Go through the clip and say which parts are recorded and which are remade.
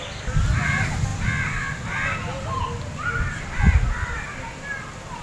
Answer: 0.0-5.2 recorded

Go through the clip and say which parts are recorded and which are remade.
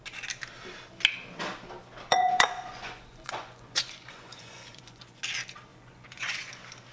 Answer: 0.0-2.1 recorded; 2.1-5.2 remade; 5.2-5.7 recorded; 5.7-6.3 remade; 6.3-6.9 recorded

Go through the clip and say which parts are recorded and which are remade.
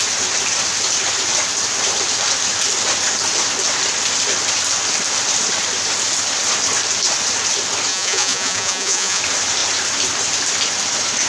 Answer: 0.0-7.9 recorded; 7.9-9.2 remade; 9.2-11.3 recorded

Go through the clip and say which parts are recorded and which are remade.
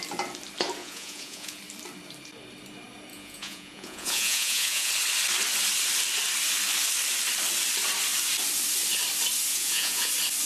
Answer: 0.0-0.8 recorded; 0.8-1.6 remade; 1.6-3.1 recorded; 3.1-4.9 remade; 4.9-9.5 recorded; 9.5-10.1 remade; 10.1-10.5 recorded